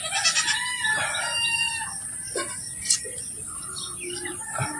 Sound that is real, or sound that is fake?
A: real